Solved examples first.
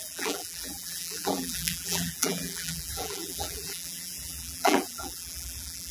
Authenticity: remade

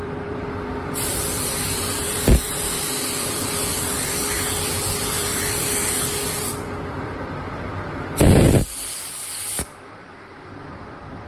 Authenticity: remade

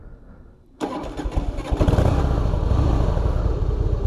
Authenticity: recorded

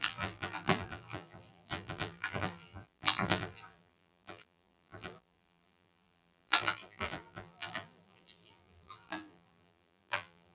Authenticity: remade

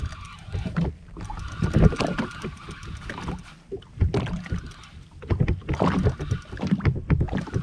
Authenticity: recorded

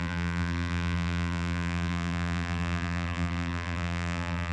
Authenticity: remade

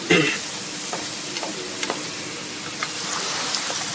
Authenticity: recorded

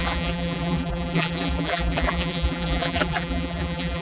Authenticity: remade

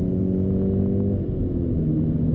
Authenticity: recorded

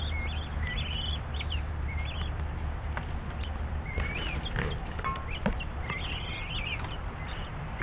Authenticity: recorded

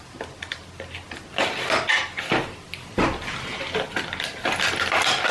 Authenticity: remade